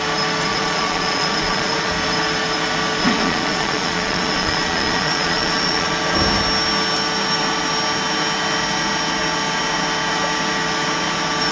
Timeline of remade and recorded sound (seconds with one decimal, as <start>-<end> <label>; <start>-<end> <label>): 0.0-0.5 recorded; 0.5-1.9 remade; 1.9-3.0 recorded; 3.0-5.9 remade; 5.9-11.5 recorded